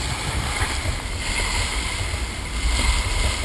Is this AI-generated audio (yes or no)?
no